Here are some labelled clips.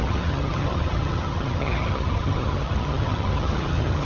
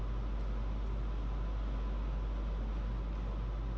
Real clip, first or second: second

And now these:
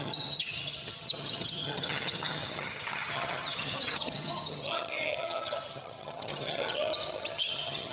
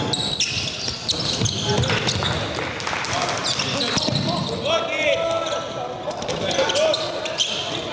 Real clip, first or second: second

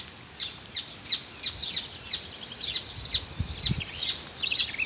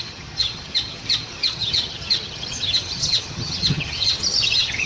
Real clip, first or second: first